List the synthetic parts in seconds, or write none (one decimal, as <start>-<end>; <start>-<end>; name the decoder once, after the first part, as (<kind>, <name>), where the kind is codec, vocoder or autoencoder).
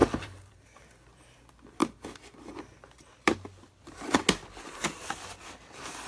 0.0-1.8 (vocoder, BigVGAN v2); 4.6-6.1